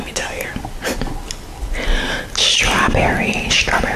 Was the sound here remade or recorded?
recorded